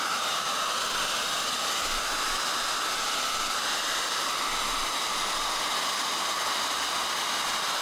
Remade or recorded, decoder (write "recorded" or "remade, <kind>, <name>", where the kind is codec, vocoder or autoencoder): recorded